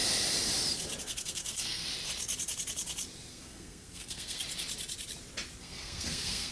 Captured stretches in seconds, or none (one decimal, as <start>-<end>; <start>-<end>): 0.0-1.0; 1.8-3.3; 4.4-5.6

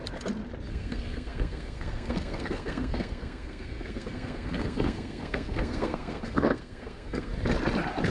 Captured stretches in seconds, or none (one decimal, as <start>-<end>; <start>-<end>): 0.0-0.7; 7.3-8.1

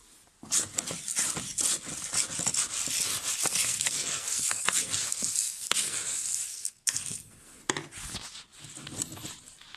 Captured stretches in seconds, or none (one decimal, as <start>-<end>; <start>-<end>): 0.0-3.5; 7.6-9.8

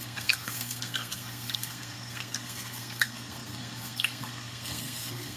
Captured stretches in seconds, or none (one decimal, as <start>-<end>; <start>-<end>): none

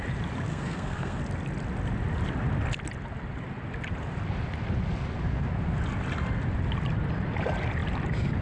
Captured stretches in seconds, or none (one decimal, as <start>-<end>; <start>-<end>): 0.0-0.5; 1.2-8.4

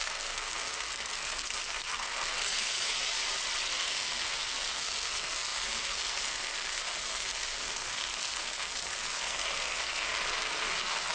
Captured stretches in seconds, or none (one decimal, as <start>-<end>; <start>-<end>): 3.2-3.7

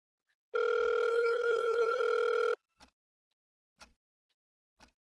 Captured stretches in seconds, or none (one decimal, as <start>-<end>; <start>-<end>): 0.0-1.1; 2.0-5.0